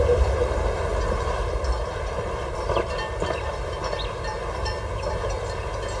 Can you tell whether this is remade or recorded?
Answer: recorded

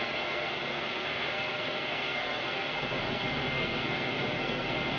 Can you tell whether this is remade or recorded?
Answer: remade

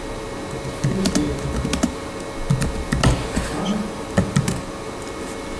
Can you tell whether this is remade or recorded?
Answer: recorded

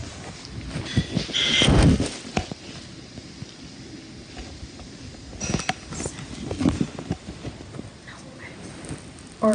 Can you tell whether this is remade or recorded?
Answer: recorded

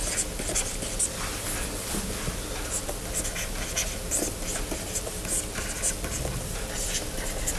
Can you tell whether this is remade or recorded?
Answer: recorded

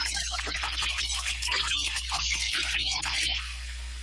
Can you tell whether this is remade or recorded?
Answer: remade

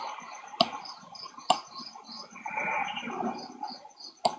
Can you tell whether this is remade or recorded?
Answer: recorded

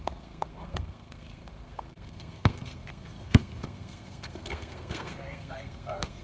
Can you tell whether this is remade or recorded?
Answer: remade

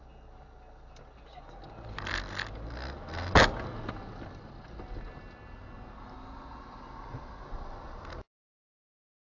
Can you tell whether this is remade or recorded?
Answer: recorded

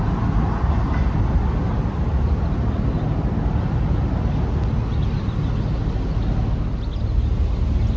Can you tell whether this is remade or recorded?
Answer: recorded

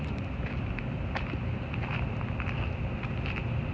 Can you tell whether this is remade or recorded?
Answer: recorded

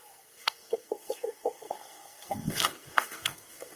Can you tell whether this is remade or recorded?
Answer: remade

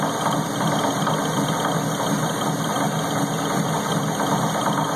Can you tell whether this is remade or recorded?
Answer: recorded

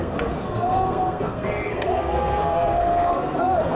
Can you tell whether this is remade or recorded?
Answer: remade